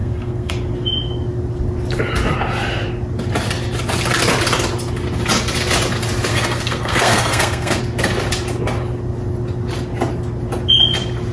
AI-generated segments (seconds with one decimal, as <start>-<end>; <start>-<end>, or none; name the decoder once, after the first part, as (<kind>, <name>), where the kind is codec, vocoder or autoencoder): 0.0-0.5 (codec, SNAC); 6.3-7.8